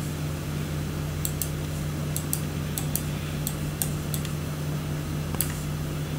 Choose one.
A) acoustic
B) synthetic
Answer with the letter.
A